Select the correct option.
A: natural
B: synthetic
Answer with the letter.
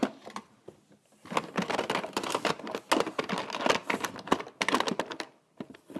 A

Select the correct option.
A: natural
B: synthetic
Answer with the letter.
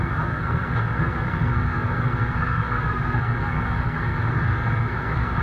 B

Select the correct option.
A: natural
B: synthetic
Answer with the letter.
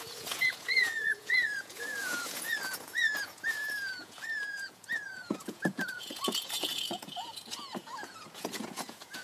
B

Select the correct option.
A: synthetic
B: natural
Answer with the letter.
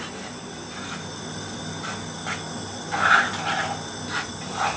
B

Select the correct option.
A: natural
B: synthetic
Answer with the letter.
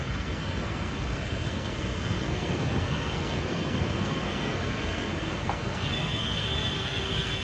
B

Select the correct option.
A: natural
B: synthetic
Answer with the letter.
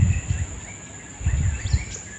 A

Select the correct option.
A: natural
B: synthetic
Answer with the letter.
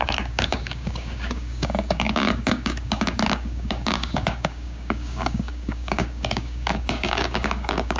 B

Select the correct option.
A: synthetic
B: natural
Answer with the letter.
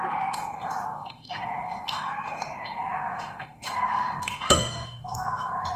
A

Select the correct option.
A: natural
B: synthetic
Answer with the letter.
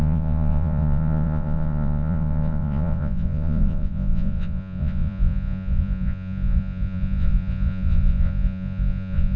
B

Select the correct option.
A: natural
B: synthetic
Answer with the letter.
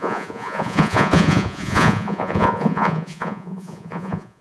B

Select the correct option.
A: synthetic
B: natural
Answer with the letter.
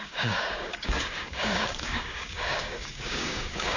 A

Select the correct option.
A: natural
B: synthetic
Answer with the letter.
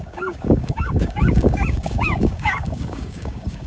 B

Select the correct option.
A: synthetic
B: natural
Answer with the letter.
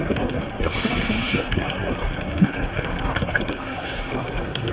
A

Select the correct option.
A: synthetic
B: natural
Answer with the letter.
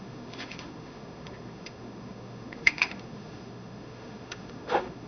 A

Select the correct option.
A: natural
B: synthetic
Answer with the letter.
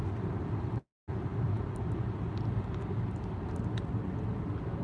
A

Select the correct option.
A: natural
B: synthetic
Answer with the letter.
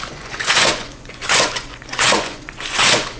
B